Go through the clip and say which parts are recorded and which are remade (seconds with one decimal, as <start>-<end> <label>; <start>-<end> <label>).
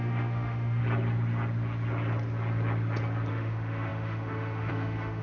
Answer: 0.0-0.8 remade; 0.8-3.3 recorded; 3.3-5.2 remade